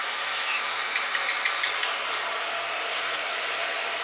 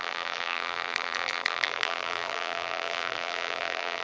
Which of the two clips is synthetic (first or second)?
second